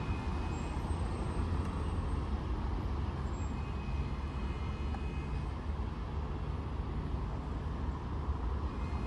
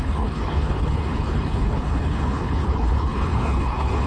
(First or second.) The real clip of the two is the first